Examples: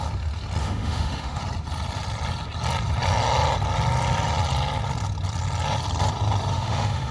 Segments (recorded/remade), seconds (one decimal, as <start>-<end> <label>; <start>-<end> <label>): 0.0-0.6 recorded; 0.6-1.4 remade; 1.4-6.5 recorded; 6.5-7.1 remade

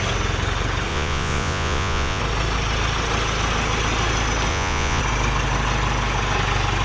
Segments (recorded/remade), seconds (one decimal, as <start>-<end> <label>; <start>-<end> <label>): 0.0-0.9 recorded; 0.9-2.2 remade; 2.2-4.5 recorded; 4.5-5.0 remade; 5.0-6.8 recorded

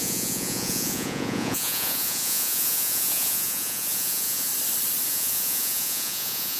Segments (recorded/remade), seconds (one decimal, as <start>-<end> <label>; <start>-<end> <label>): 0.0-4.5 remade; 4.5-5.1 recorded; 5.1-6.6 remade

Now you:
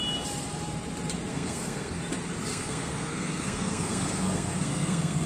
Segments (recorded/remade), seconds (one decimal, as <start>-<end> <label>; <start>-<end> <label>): 0.0-1.3 recorded; 1.3-2.0 remade; 2.0-2.5 recorded; 2.5-5.3 remade

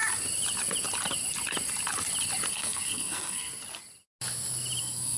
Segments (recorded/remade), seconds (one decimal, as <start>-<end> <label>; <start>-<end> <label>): 0.0-2.5 recorded; 2.5-3.5 remade; 3.5-4.8 recorded; 4.8-5.2 remade

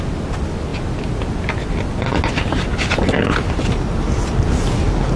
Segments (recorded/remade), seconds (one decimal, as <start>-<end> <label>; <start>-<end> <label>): 0.0-5.2 recorded

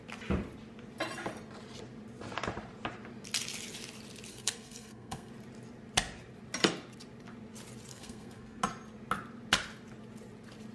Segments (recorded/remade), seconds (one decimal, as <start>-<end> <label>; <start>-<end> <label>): 0.0-4.3 recorded; 4.3-5.3 remade; 5.3-7.9 recorded; 7.9-8.6 remade; 8.6-10.7 recorded

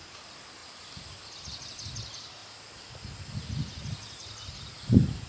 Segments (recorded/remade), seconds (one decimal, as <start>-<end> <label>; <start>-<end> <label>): 0.0-5.3 recorded